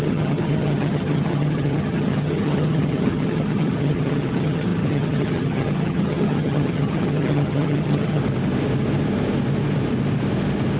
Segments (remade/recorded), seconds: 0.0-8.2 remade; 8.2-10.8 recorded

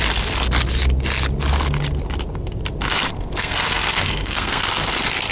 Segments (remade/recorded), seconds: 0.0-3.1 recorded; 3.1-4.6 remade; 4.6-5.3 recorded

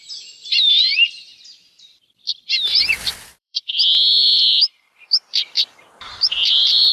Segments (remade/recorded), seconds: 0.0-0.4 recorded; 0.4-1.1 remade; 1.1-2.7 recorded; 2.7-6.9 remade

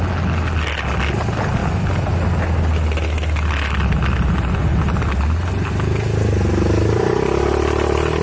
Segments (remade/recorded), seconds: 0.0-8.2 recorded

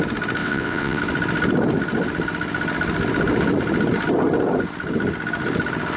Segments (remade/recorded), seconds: 0.0-0.4 recorded; 0.4-1.0 remade; 1.0-6.0 recorded

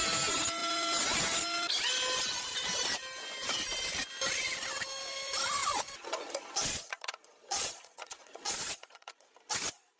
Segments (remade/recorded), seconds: 0.0-5.6 recorded; 5.6-9.3 remade; 9.3-10.0 recorded